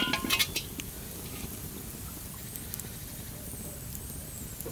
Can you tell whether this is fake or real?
real